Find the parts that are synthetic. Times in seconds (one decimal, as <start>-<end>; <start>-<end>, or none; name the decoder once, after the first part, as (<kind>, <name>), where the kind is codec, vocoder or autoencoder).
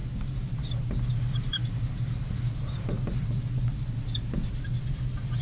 1.1-1.6 (vocoder, BigVGAN v2); 4.8-5.4